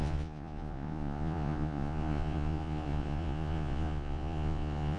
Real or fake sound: fake